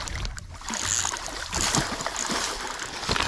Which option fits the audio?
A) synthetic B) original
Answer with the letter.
B